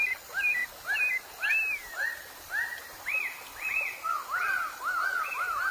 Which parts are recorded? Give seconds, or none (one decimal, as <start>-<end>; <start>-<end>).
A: 0.6-2.8